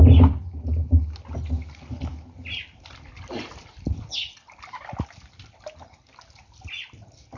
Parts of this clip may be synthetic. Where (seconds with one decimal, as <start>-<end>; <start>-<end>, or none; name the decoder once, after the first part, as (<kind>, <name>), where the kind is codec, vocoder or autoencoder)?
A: none

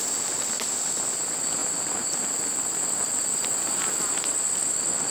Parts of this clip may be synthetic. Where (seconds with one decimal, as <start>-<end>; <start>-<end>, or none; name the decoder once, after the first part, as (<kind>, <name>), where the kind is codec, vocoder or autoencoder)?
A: none

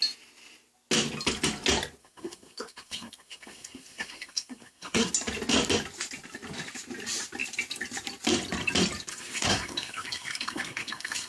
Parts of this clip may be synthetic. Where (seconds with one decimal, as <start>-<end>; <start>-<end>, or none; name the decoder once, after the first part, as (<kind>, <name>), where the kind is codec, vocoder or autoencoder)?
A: 2.0-5.1 (codec, SNAC); 9.1-11.3

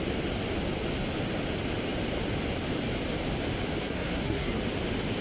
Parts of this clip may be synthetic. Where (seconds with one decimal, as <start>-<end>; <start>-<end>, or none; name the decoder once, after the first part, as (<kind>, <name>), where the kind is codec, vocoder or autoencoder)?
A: 3.8-4.6 (codec, SNAC)